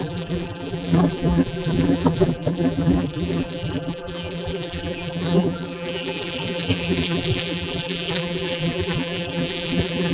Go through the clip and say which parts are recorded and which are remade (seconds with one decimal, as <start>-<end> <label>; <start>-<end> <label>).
0.0-10.1 remade